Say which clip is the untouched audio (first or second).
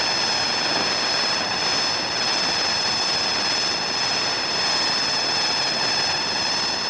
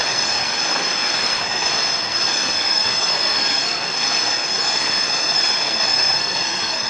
first